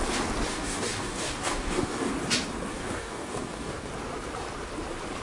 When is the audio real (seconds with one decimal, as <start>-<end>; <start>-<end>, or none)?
0.0-0.5; 2.1-2.7; 3.9-5.2